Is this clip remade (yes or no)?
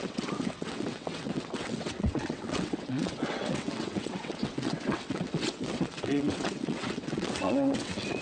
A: yes